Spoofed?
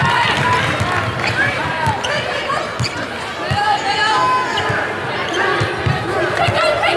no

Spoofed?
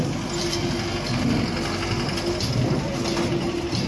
no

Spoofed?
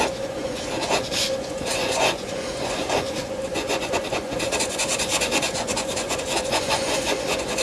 yes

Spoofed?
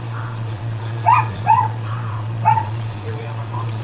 yes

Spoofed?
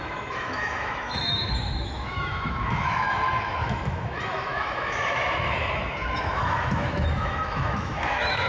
yes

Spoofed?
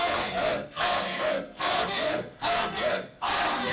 yes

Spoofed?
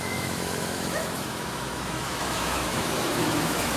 yes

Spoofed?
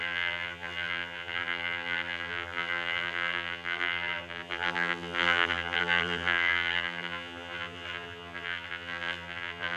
yes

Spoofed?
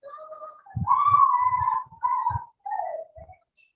yes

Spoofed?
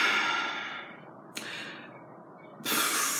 no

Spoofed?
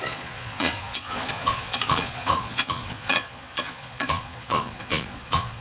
yes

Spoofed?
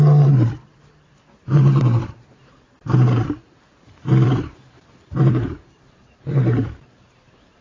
yes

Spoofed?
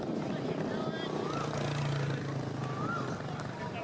no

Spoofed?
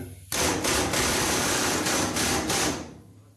no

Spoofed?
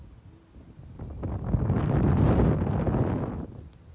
no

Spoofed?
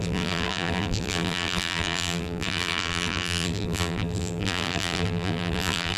yes